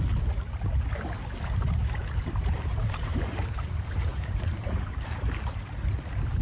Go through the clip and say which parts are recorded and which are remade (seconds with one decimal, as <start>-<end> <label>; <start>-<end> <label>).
0.0-2.0 recorded; 2.0-5.1 remade; 5.1-6.4 recorded